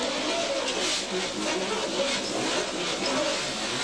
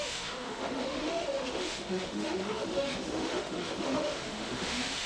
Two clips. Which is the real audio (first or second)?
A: first